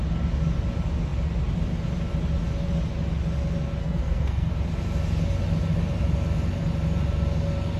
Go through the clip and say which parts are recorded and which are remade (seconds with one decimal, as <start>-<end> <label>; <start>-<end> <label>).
0.0-3.8 recorded; 3.8-4.5 remade; 4.5-7.8 recorded